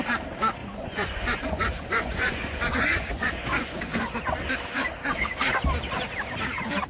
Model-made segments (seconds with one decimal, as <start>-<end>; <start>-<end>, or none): 0.6-3.8